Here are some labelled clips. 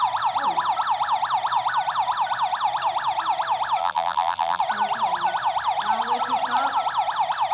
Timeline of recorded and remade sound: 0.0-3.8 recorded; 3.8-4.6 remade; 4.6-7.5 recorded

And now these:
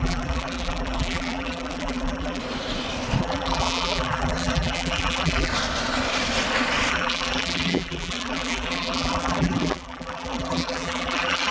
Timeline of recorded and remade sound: 0.0-2.4 remade; 2.4-3.2 recorded; 3.2-5.5 remade; 5.5-6.9 recorded; 6.9-11.5 remade

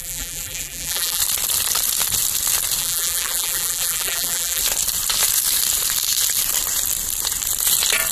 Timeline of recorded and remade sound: 0.0-1.2 remade; 1.2-2.8 recorded; 2.8-4.6 remade; 4.6-8.1 recorded

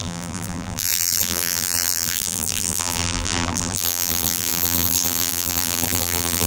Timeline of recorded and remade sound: 0.0-6.5 remade